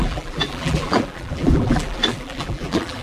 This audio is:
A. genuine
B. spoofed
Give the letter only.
B